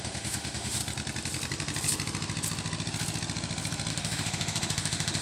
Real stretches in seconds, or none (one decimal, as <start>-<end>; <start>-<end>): 0.8-3.9